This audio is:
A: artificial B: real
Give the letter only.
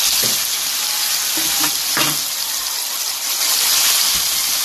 B